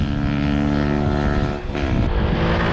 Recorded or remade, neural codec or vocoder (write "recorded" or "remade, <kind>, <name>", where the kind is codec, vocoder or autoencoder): recorded